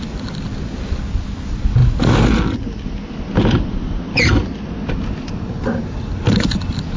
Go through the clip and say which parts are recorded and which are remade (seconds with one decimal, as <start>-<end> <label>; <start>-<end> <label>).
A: 0.0-7.0 recorded